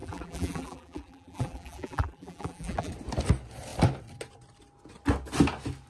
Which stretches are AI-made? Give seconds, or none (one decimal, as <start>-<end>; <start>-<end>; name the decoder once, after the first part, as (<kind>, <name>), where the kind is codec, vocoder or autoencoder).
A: 0.0-2.9 (vocoder, BigVGAN v2)